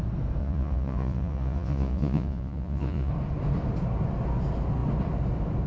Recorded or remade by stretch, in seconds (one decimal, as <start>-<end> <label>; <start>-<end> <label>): 0.0-0.4 recorded; 0.4-3.1 remade; 3.1-5.7 recorded